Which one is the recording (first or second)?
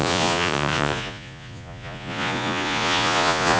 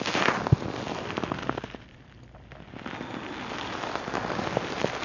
second